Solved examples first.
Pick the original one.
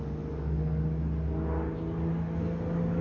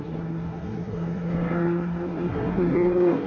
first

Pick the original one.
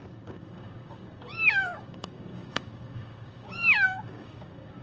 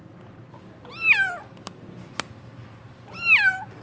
second